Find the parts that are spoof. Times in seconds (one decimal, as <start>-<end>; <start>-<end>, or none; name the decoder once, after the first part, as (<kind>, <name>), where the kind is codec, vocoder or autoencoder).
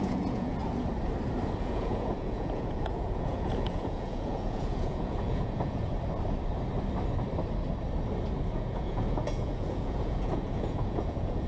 0.0-0.6 (vocoder, Vocos); 1.6-5.9; 8.5-11.5